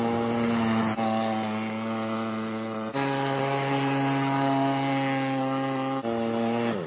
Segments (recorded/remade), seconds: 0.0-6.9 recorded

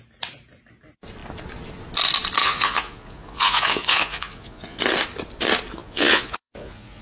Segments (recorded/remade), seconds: 0.0-2.4 recorded; 2.4-4.8 remade; 4.8-5.8 recorded; 5.8-7.0 remade

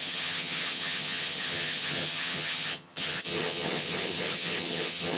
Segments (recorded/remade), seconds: 0.0-5.2 remade

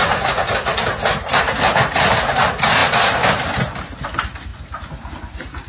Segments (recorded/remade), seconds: 0.0-5.7 recorded

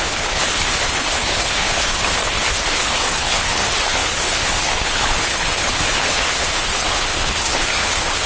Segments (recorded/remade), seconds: 0.0-8.3 remade

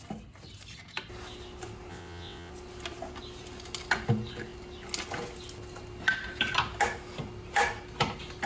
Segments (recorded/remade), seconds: 0.0-1.9 recorded; 1.9-2.5 remade; 2.5-8.5 recorded